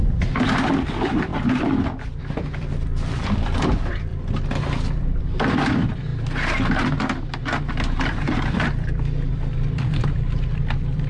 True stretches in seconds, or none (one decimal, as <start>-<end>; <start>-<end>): 4.1-4.9; 6.1-7.7